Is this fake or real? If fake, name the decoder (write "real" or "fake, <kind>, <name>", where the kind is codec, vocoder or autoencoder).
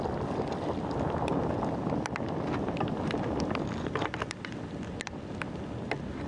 real